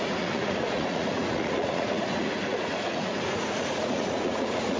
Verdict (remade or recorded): remade